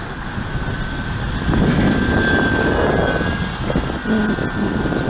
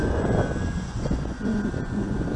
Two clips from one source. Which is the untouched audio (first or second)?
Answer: first